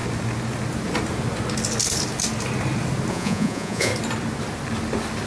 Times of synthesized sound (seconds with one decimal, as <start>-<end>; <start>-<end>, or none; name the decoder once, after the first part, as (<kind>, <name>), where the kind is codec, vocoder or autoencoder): 3.1-3.9 (vocoder, Vocos)